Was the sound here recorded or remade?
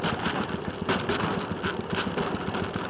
remade